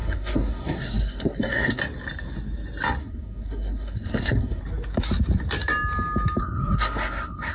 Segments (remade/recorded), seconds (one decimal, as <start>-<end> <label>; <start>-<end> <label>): 0.0-1.8 remade; 1.8-3.0 recorded; 3.0-4.6 remade; 4.6-6.4 recorded; 6.4-7.5 remade

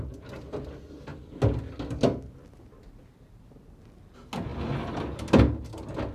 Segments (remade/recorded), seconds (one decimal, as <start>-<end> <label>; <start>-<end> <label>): 0.0-6.1 recorded

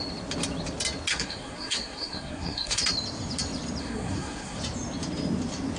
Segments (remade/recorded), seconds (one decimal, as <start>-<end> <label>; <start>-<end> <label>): 0.0-1.1 recorded; 1.1-2.8 remade; 2.8-3.8 recorded; 3.8-4.6 remade; 4.6-5.8 recorded

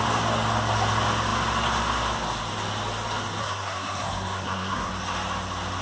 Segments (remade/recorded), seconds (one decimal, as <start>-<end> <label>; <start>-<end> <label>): 0.0-3.4 recorded; 3.4-4.9 remade; 4.9-5.8 recorded

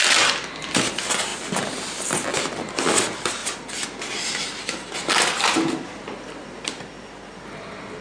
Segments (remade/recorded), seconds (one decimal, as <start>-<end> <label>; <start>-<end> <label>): 0.0-8.0 recorded

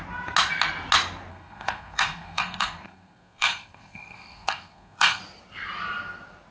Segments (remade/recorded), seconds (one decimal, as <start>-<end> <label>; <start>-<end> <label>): 0.0-1.3 recorded; 1.3-5.2 remade; 5.2-6.5 recorded